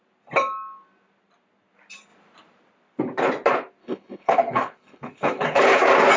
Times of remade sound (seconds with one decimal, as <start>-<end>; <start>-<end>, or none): 3.8-5.8